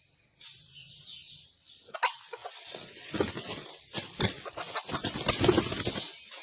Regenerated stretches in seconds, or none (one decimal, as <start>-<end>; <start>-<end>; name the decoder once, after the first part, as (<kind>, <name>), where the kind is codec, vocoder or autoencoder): 0.0-2.4 (vocoder, BigVGAN v2); 3.8-6.4